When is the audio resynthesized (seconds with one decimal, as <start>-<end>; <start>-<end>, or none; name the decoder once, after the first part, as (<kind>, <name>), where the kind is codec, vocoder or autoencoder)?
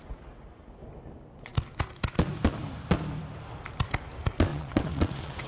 4.5-5.5 (vocoder, WaveNeXt)